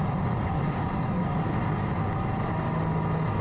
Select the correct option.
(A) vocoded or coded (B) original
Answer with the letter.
B